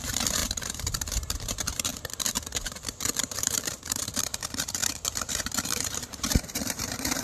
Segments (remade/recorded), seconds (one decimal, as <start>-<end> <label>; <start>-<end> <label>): 0.0-1.9 remade; 1.9-3.3 recorded; 3.3-7.2 remade